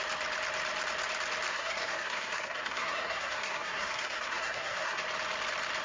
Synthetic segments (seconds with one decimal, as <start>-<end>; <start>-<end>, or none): 1.5-5.0